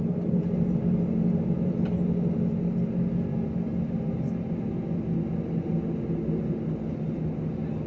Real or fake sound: real